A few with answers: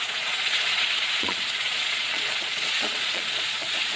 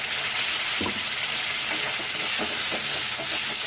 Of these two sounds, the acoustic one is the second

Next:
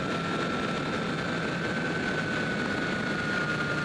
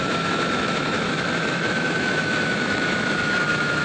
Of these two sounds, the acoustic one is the first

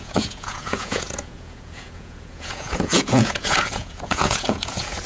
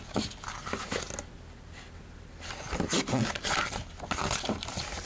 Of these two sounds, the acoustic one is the second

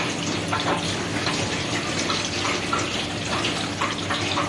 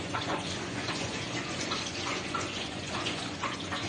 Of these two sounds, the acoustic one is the first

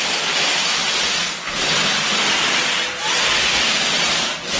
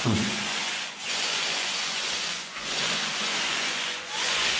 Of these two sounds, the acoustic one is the first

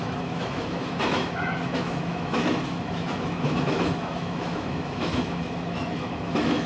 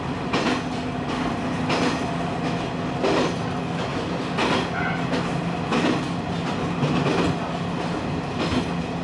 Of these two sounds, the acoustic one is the second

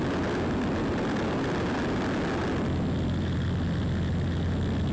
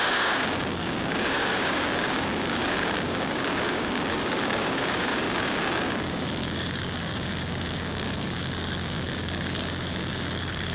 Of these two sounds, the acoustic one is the first